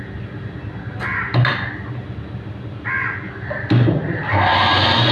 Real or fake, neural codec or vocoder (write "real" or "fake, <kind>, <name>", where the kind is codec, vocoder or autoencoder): real